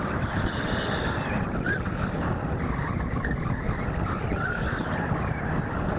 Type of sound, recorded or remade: recorded